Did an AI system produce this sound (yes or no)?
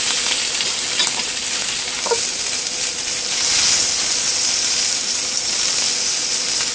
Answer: no